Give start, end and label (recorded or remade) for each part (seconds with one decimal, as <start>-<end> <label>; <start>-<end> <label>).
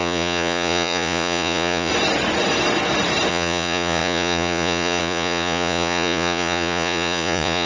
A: 0.0-1.9 remade; 1.9-3.3 recorded; 3.3-7.7 remade